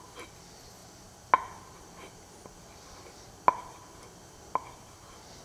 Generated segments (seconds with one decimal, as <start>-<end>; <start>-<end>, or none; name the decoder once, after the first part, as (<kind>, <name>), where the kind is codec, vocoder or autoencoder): none